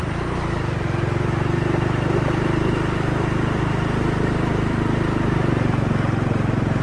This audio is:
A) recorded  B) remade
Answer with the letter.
A